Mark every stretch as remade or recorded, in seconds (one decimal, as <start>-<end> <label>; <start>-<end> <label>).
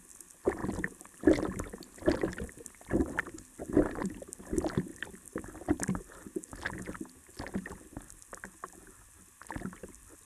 0.0-10.2 recorded